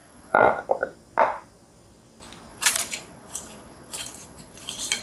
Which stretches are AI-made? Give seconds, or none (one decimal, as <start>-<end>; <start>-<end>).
0.0-0.5; 2.5-5.0